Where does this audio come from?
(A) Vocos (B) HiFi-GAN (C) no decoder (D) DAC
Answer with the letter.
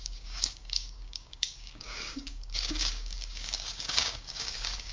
D